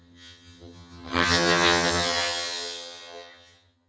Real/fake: fake